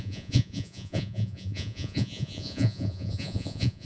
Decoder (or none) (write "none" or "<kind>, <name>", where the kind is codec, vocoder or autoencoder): vocoder, Vocos